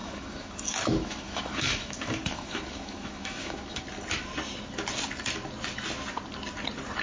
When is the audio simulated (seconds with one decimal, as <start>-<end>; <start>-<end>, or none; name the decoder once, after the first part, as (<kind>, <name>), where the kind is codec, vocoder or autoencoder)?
0.0-3.8 (autoencoder, DAC-VAE)